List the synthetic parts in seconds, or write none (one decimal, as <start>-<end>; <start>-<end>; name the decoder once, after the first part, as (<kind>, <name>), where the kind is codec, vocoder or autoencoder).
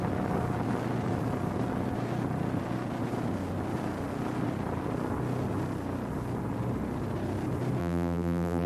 7.8-8.7 (vocoder, BigVGAN v2)